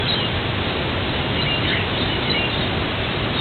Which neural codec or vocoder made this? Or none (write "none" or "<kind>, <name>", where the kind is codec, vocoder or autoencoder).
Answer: none